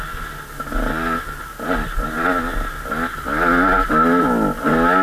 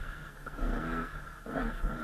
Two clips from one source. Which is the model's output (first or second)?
second